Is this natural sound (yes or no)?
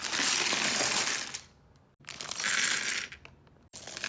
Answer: yes